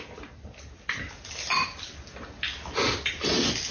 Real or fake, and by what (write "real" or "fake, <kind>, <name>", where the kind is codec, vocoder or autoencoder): real